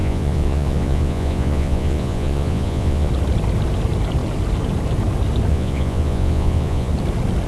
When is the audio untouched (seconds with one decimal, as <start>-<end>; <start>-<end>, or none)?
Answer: 3.1-5.5; 6.9-7.5